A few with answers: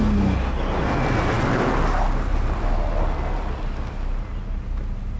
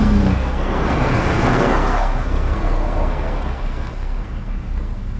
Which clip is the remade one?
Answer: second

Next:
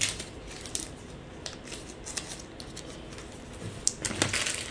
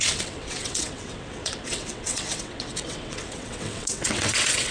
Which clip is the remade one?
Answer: second